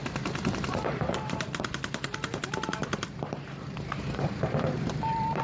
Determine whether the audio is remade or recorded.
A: remade